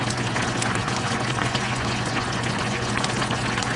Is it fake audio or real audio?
fake